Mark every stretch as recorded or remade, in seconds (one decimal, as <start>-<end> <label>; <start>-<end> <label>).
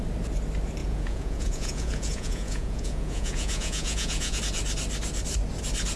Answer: 0.0-0.8 recorded; 0.8-4.4 remade; 4.4-6.0 recorded